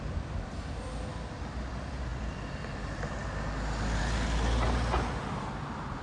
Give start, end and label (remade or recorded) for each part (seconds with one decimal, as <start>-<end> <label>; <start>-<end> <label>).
0.0-2.1 recorded; 2.1-4.0 remade; 4.0-6.0 recorded